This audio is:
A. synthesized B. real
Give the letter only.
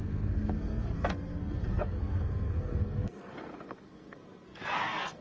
A